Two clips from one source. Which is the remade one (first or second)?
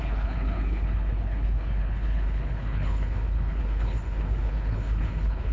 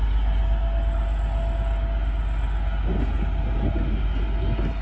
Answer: first